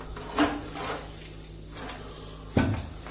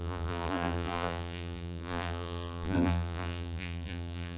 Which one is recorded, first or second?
first